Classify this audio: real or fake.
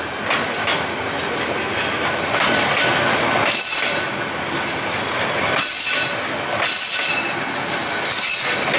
real